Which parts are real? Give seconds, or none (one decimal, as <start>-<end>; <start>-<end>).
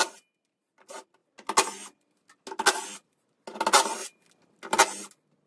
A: 0.0-5.5